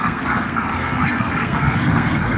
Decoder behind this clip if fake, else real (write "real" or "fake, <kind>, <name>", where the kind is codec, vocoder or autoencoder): fake, codec, SNAC